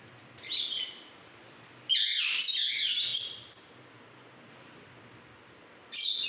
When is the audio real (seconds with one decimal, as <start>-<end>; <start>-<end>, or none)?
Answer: 0.0-1.2; 2.3-6.3